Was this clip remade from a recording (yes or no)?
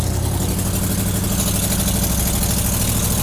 no